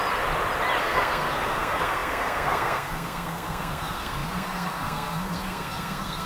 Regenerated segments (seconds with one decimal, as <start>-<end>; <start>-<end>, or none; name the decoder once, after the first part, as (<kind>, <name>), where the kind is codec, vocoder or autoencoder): 0.8-6.3 (codec, SNAC)